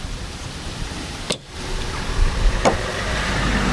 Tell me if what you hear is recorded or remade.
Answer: remade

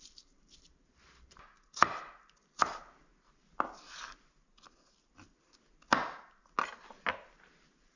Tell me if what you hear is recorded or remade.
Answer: recorded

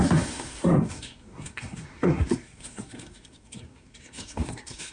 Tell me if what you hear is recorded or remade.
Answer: remade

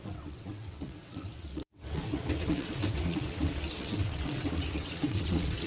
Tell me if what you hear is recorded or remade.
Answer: remade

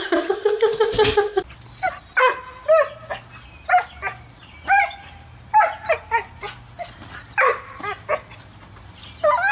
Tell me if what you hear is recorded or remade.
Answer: recorded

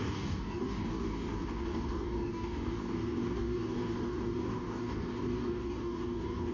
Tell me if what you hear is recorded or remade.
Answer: remade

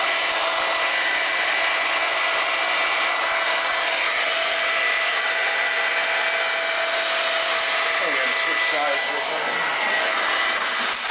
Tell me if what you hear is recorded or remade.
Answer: recorded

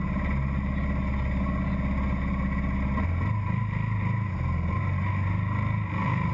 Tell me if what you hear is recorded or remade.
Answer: recorded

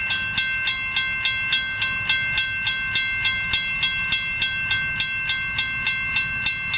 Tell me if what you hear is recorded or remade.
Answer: recorded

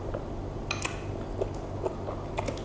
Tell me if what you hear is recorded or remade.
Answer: recorded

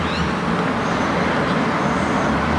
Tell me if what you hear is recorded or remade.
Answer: recorded